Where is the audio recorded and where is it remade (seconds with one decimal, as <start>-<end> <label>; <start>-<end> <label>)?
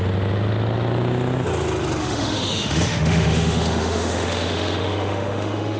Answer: 0.0-2.0 recorded; 2.0-5.8 remade